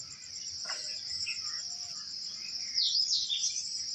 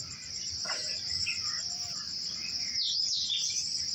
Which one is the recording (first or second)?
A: first